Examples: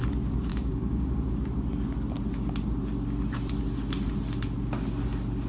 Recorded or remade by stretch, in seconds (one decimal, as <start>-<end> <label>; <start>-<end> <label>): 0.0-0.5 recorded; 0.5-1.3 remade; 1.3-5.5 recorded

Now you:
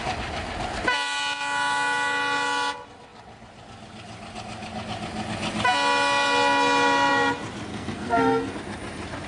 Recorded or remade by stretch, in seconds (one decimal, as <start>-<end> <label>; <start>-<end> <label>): 0.0-7.7 recorded; 7.7-8.5 remade; 8.5-9.3 recorded

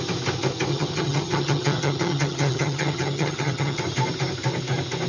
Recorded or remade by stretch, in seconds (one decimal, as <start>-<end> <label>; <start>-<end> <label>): 0.0-0.7 recorded; 0.7-3.8 remade; 3.8-5.1 recorded

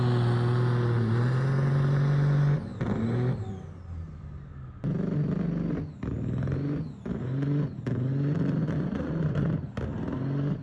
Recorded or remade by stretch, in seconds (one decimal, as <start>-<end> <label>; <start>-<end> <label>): 0.0-8.6 recorded; 8.6-9.5 remade; 9.5-10.6 recorded